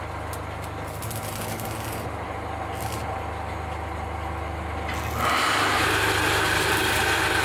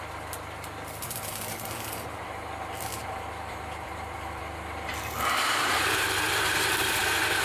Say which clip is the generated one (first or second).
second